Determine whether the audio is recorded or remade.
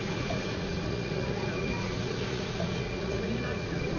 remade